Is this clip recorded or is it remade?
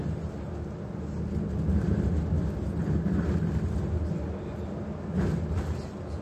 recorded